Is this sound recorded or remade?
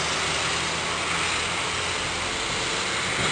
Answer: recorded